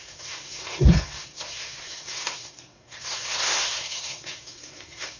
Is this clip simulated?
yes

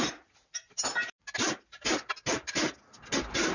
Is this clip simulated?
no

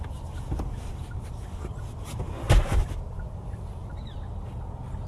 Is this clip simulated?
no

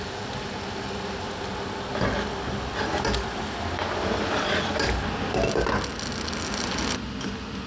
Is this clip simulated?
no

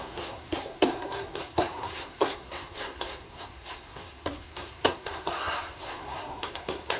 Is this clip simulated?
yes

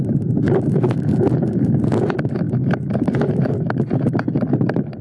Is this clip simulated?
no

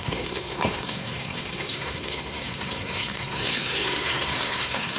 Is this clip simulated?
yes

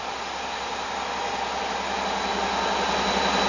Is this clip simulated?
no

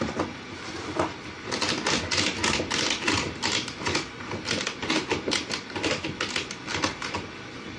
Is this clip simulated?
no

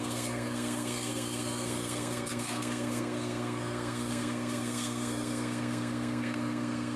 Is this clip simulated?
yes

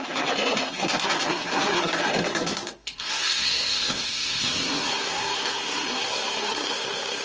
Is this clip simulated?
yes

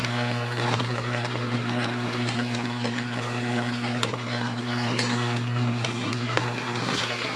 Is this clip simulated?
yes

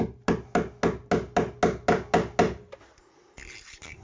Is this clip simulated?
no